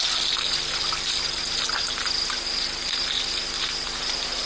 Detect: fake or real real